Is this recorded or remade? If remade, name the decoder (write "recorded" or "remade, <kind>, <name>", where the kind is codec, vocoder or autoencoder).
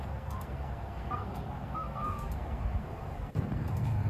remade, codec, SNAC